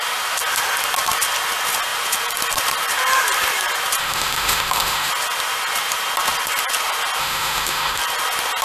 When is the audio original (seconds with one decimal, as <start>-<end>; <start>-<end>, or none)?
0.0-4.0; 5.1-7.2; 8.0-8.6